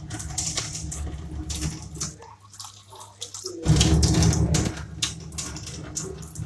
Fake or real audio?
real